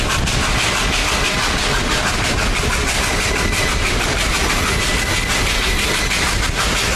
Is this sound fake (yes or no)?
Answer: no